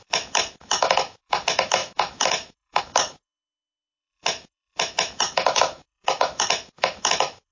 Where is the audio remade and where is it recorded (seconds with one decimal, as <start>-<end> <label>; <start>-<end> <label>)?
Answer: 0.0-7.5 remade